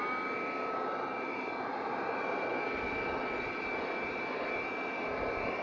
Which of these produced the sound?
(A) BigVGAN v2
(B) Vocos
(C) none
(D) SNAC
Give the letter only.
C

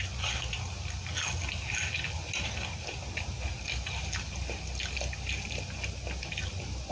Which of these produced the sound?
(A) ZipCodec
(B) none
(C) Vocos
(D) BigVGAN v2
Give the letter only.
B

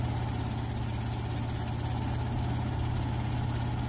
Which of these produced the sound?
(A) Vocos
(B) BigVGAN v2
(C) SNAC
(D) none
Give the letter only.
D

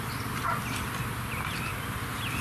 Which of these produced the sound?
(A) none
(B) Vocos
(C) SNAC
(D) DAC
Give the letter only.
A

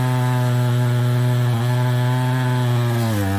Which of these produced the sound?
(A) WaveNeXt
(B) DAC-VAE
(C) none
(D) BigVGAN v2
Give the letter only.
C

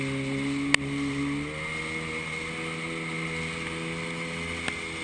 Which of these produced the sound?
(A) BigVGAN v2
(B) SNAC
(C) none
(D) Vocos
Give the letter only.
C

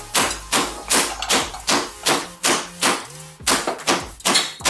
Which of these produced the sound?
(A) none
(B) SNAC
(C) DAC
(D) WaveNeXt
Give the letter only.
A